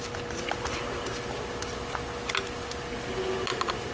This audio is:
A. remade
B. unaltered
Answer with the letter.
B